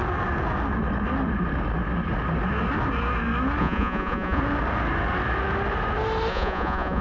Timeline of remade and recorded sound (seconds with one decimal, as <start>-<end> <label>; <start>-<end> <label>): 0.0-3.6 recorded; 3.6-4.4 remade; 4.4-6.3 recorded; 6.3-7.0 remade